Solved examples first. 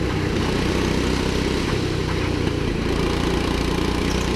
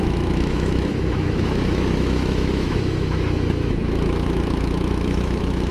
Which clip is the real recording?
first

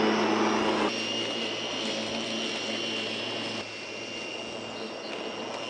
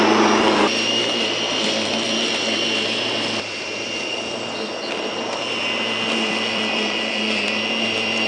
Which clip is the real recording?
first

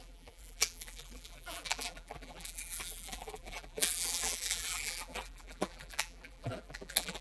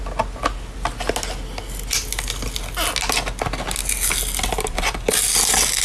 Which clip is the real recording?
second